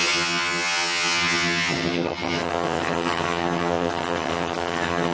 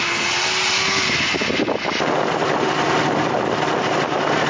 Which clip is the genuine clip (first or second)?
second